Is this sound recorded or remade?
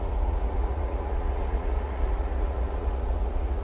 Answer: remade